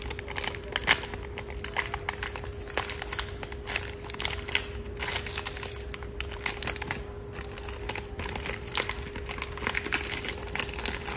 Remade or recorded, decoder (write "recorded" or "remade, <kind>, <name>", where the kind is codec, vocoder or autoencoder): recorded